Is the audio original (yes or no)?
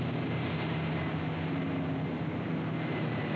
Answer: yes